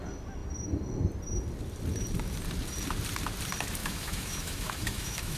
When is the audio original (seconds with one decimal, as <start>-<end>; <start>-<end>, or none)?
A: 0.0-3.8